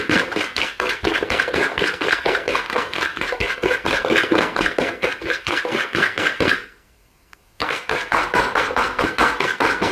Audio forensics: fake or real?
fake